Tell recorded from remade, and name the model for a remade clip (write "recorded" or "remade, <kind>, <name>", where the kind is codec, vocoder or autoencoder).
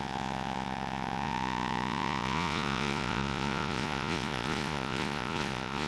remade, vocoder, Vocos